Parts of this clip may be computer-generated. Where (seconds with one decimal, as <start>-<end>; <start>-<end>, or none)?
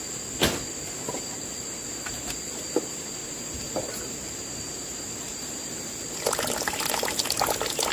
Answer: 3.2-6.0